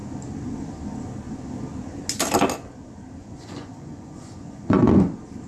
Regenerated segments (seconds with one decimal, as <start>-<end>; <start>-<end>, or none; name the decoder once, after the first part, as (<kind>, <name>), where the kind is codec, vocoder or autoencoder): 3.2-4.9 (vocoder, Vocos)